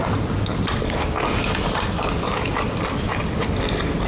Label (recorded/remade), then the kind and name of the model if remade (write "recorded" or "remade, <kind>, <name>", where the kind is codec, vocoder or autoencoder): recorded